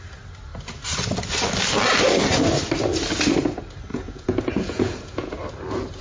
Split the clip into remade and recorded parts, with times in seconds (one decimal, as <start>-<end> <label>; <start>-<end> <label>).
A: 0.0-3.9 recorded; 3.9-5.3 remade; 5.3-6.0 recorded